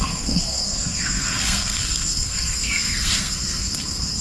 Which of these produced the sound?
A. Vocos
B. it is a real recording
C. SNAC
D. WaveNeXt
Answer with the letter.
C